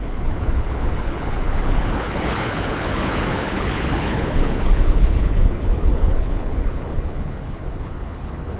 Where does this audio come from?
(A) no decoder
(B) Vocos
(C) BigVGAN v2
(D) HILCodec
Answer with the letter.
D